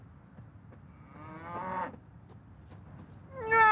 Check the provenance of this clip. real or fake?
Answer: real